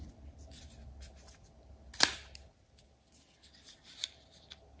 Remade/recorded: recorded